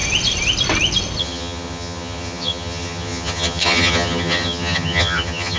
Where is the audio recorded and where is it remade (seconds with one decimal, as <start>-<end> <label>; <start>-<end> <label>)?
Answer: 0.0-1.2 recorded; 1.2-5.6 remade